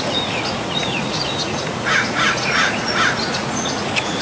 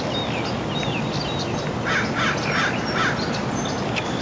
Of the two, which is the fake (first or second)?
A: first